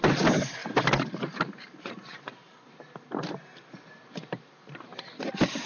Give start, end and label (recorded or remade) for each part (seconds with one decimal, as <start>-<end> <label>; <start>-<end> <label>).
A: 0.0-5.7 recorded